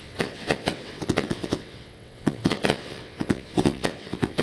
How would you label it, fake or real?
fake